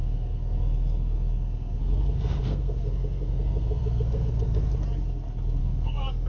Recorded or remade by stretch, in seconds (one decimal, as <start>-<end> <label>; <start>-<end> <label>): 0.0-4.7 remade; 4.7-5.6 recorded; 5.6-6.3 remade